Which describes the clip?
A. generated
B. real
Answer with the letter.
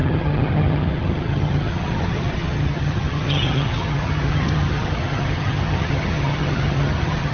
A